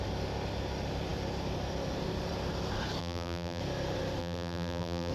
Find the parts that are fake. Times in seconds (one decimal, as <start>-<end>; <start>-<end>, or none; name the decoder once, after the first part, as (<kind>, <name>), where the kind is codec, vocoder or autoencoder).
3.0-3.6 (vocoder, BigVGAN v2); 4.2-5.1